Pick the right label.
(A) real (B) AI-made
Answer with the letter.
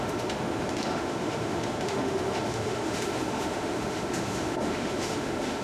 B